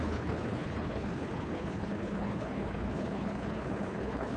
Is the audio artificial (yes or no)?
yes